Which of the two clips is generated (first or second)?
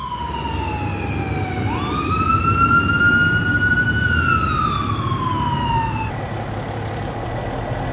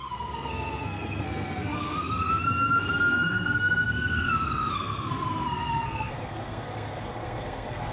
second